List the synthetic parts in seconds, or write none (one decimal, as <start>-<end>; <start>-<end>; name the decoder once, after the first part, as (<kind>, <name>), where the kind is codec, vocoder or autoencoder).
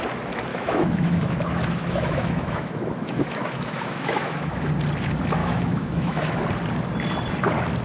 0.5-4.7 (autoencoder, DAC-VAE); 5.4-6.3